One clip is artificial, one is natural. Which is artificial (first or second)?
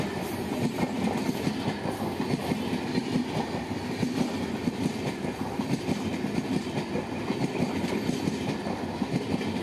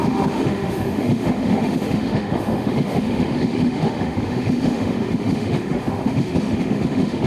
second